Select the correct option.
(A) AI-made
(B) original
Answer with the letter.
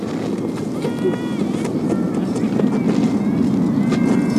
B